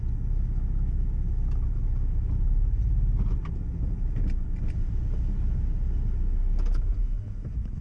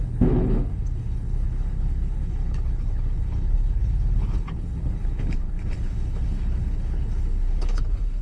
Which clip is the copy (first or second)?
second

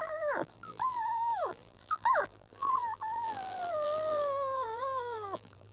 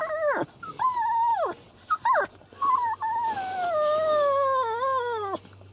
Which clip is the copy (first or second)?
first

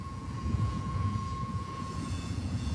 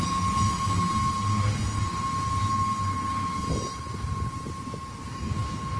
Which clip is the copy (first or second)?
first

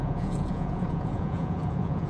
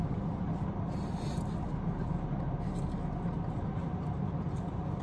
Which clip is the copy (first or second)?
first